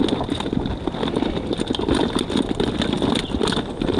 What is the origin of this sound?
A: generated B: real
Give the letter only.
B